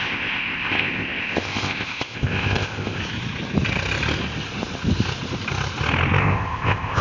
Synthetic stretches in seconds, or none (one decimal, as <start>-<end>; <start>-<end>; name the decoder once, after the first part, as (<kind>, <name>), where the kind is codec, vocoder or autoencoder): 0.0-3.0 (codec, ZipCodec); 6.2-7.0